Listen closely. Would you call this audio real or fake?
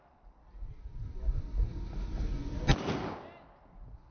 real